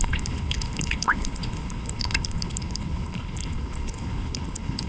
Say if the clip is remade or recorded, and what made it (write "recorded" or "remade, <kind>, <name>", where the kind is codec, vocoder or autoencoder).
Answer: remade, codec, HILCodec